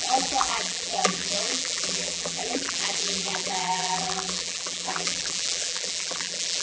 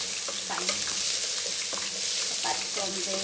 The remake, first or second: first